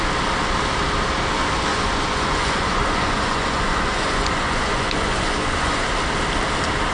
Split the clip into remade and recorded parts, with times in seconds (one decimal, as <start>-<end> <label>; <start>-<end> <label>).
0.0-1.7 recorded; 1.7-5.8 remade; 5.8-6.9 recorded

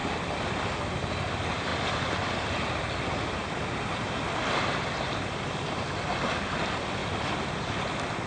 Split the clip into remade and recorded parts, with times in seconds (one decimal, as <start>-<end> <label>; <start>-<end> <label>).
0.0-8.3 recorded

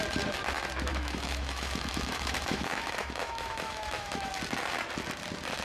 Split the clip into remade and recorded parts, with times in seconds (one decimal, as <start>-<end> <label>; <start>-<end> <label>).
0.0-0.9 recorded; 0.9-4.3 remade; 4.3-5.6 recorded

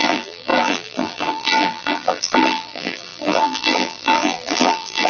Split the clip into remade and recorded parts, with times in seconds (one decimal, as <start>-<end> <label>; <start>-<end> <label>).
0.0-5.1 remade

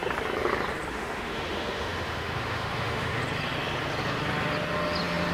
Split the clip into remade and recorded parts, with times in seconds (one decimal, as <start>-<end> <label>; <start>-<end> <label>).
0.0-0.9 recorded; 0.9-3.2 remade; 3.2-5.3 recorded

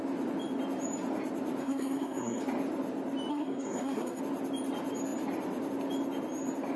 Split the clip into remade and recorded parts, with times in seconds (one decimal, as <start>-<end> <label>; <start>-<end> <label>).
0.0-1.6 recorded; 1.6-2.4 remade; 2.4-3.3 recorded; 3.3-4.2 remade; 4.2-6.8 recorded

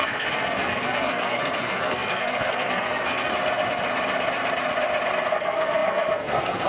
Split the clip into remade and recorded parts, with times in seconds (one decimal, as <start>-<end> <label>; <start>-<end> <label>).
0.0-3.3 remade; 3.3-5.3 recorded; 5.3-6.7 remade